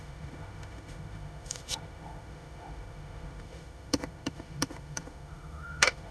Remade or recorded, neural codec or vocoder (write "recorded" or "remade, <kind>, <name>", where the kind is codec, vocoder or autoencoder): remade, autoencoder, DAC-VAE